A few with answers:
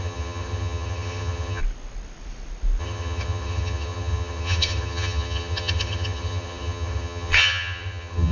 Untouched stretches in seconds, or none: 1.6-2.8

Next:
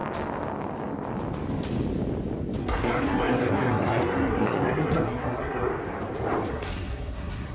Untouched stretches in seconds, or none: 0.0-2.6; 5.7-6.5

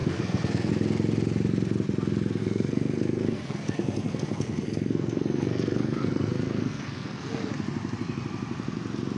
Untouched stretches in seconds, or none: 0.7-2.4; 7.5-9.2